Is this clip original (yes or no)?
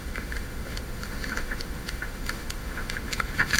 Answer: no